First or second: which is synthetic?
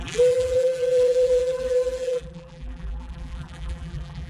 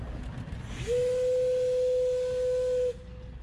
first